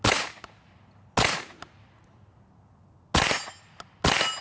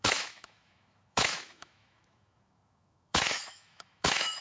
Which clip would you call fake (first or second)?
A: second